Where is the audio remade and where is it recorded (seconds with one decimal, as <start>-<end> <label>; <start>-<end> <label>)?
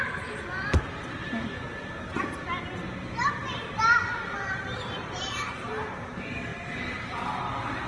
0.0-3.4 recorded; 3.4-6.1 remade; 6.1-7.9 recorded